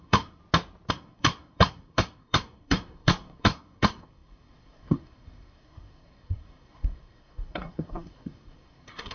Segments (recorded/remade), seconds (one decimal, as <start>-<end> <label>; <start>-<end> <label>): 0.0-0.4 remade; 0.4-0.9 recorded; 0.9-9.1 remade